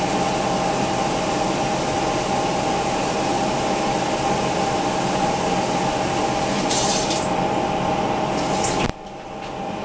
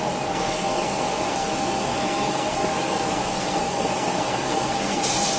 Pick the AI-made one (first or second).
second